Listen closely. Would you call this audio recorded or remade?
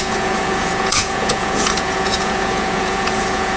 remade